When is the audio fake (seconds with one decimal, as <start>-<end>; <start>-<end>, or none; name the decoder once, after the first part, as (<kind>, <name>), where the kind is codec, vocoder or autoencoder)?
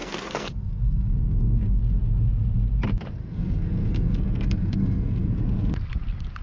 0.0-1.8 (codec, SNAC); 3.2-5.4